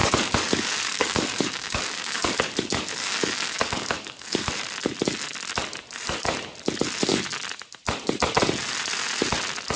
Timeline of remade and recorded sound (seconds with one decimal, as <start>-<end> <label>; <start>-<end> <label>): 0.0-4.5 remade; 4.5-9.8 recorded